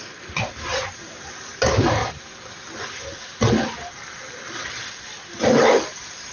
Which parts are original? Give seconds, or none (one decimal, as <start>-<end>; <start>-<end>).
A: 0.0-6.3